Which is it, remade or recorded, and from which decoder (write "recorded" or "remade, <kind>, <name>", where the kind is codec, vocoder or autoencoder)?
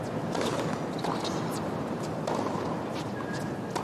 recorded